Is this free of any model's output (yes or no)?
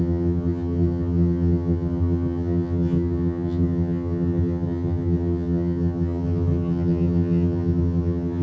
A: no